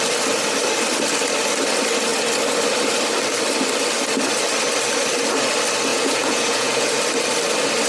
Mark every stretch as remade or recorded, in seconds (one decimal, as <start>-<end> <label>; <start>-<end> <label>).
0.0-5.9 recorded; 5.9-7.0 remade; 7.0-7.9 recorded